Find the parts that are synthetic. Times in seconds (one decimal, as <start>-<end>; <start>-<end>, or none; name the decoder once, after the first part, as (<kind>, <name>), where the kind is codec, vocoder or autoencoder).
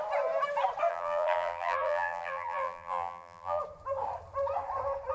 0.9-3.6 (vocoder, BigVGAN v2)